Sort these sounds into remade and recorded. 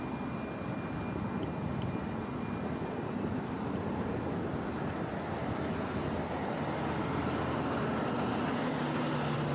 recorded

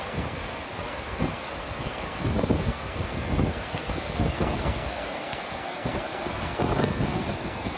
remade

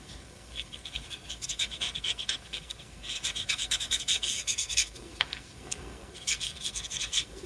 remade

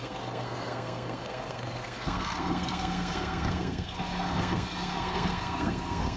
remade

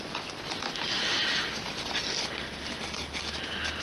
recorded